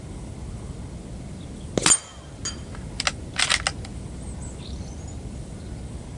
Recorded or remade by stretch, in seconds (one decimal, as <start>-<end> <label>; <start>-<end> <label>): 0.0-6.2 recorded